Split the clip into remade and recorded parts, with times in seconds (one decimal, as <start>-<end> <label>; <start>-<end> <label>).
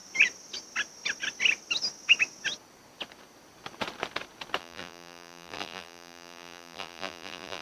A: 0.0-4.6 recorded; 4.6-7.6 remade